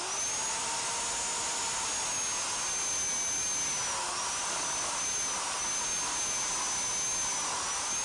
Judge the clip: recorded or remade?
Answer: recorded